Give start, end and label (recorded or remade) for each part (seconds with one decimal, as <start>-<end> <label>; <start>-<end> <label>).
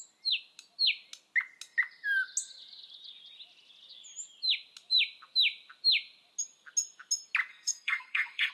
0.0-7.5 recorded; 7.5-8.5 remade